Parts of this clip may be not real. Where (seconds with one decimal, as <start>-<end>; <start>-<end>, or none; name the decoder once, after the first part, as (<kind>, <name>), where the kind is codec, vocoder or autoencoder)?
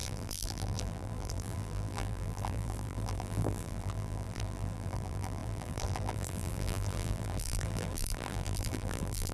0.0-9.3 (vocoder, BigVGAN v2)